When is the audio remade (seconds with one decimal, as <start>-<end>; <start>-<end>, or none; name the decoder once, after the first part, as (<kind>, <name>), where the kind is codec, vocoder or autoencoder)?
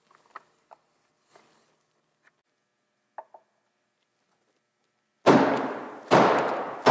none